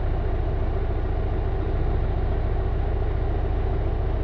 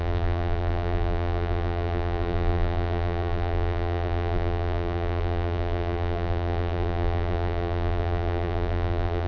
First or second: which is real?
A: first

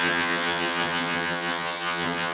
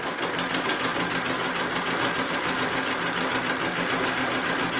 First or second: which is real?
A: second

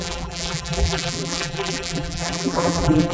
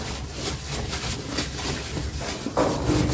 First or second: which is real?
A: second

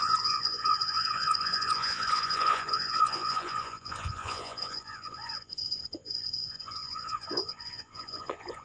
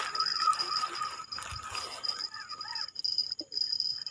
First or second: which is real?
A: second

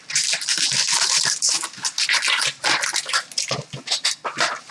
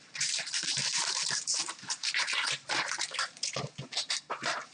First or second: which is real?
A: first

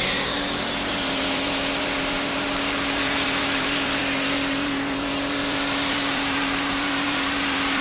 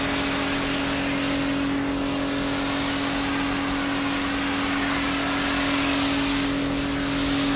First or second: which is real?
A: second